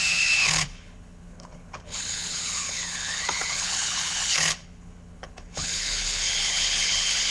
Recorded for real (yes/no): no